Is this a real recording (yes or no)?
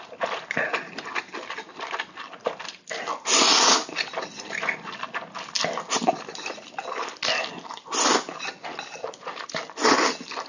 yes